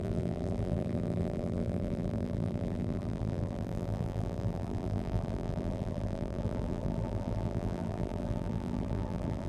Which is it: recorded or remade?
remade